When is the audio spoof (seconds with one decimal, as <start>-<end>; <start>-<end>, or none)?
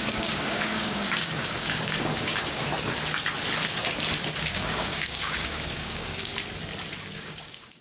0.0-2.7; 4.4-6.3; 7.1-7.8